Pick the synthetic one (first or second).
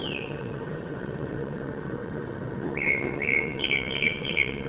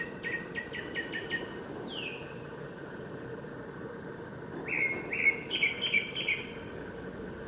first